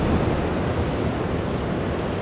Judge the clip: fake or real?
real